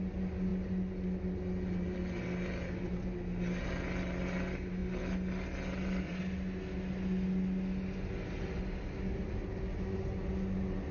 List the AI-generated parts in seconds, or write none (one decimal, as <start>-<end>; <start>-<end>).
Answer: none